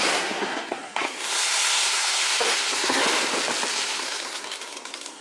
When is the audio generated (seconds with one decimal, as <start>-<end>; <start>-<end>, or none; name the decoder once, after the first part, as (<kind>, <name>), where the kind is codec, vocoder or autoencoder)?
0.0-3.0 (codec, SNAC); 3.7-5.2

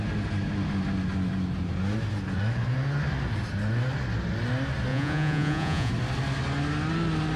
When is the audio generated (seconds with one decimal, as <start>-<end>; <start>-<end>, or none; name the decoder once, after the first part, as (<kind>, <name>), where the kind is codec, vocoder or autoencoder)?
4.9-5.9 (vocoder, Vocos)

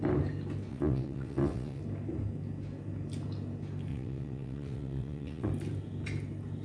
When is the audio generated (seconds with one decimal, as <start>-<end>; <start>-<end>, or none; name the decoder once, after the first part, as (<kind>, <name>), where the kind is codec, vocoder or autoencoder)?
0.7-1.8 (vocoder, WaveNeXt); 3.9-5.5

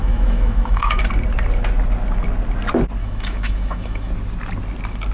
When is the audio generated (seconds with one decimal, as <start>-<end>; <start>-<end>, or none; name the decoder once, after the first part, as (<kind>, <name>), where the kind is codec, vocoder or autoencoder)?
0.0-1.0 (autoencoder, DAC-VAE); 3.0-4.1

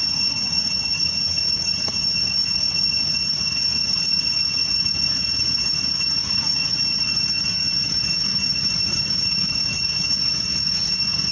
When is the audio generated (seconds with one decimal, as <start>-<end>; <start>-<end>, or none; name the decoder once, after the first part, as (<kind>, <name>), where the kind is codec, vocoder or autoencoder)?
0.0-6.5 (vocoder, Vocos); 9.0-11.3

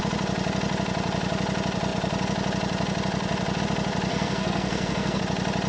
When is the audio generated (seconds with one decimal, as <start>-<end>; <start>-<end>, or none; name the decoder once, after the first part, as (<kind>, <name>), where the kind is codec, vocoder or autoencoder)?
4.1-5.2 (codec, SNAC)

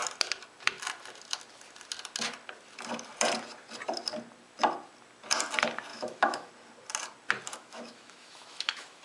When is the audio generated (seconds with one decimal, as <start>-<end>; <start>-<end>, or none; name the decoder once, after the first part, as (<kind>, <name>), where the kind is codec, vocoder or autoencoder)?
5.9-6.5 (autoencoder, DAC-VAE); 7.5-9.0